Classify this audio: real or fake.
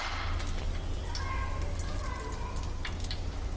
real